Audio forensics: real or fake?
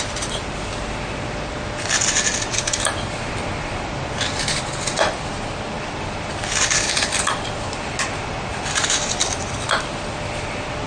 fake